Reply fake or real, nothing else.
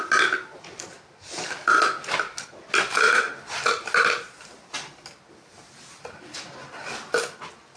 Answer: real